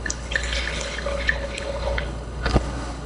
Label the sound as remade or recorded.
remade